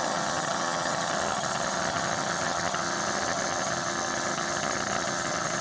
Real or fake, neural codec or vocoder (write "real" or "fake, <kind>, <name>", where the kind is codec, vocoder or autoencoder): fake, vocoder, HiFi-GAN